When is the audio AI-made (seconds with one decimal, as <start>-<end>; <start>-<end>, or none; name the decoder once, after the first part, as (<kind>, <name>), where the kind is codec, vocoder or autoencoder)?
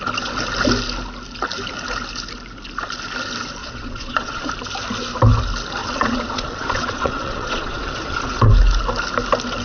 3.6-4.4 (vocoder, Vocos); 5.8-8.5